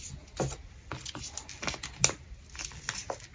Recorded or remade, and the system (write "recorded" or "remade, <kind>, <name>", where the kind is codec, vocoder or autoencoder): recorded